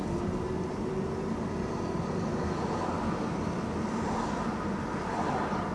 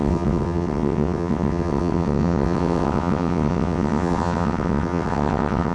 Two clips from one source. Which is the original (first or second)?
first